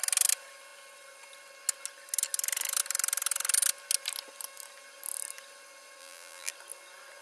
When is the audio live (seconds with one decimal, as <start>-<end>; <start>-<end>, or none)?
0.0-6.0; 6.5-7.2